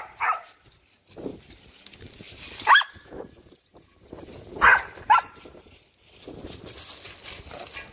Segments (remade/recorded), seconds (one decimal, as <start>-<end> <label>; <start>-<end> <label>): 0.0-1.3 recorded; 1.3-4.3 remade; 4.3-4.7 recorded; 4.7-5.4 remade; 5.4-7.9 recorded